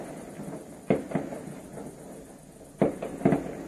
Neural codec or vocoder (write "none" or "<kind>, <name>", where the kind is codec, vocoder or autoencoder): none